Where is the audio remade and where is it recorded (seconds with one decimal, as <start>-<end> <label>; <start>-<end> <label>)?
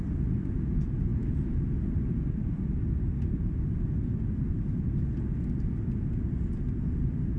0.0-7.4 recorded